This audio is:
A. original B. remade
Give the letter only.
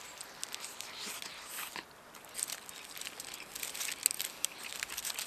A